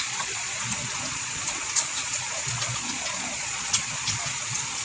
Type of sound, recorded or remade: remade